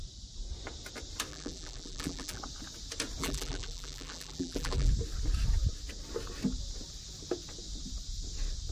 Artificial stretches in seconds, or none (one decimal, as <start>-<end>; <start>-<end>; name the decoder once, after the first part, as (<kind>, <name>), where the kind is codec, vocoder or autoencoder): 1.3-2.4 (vocoder, BigVGAN v2); 3.2-4.9